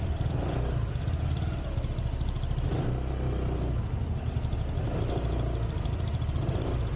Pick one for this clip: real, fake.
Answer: real